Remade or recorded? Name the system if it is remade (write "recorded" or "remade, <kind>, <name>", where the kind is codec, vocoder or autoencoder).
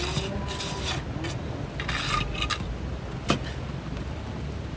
recorded